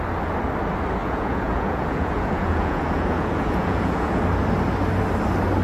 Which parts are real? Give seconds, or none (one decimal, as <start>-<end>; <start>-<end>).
0.0-1.0; 4.2-5.6